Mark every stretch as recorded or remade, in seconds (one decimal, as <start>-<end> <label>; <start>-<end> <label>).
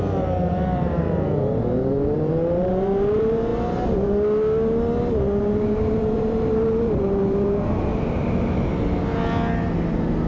0.0-3.5 remade; 3.5-5.4 recorded; 5.4-7.9 remade; 7.9-10.3 recorded